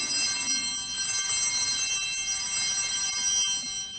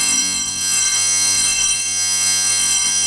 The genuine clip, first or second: first